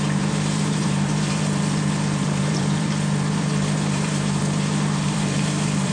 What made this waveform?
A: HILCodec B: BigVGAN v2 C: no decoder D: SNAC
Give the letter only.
B